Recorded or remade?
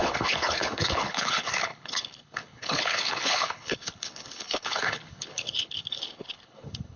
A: remade